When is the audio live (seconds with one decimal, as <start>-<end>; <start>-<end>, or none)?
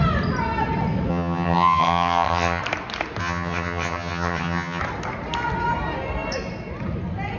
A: 0.0-1.1; 2.6-3.2; 4.8-7.4